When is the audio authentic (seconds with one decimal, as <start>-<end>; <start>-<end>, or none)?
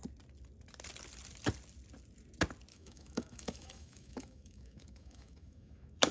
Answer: 0.0-2.7